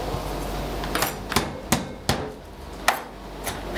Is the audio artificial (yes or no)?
no